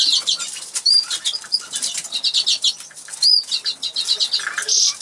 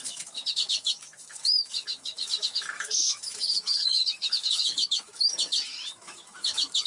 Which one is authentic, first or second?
first